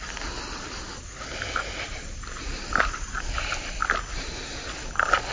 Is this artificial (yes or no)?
yes